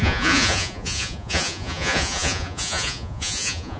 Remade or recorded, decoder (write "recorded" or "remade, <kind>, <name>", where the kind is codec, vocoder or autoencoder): remade, vocoder, Vocos